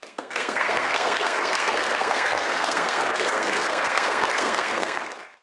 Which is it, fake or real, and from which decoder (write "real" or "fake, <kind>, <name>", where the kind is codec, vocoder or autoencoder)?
fake, codec, SNAC